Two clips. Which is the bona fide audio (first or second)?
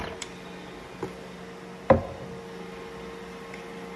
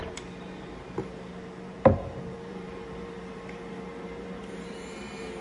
first